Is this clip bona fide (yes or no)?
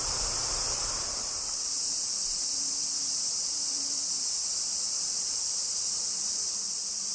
no